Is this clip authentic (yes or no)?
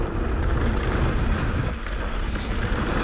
yes